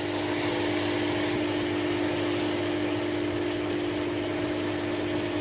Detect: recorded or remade recorded